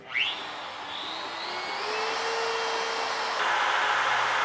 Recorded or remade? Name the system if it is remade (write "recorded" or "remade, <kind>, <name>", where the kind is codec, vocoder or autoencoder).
recorded